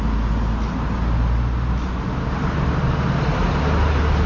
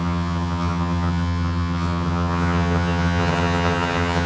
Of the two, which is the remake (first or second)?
second